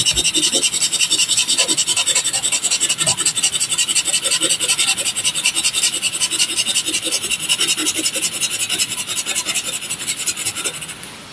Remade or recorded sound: recorded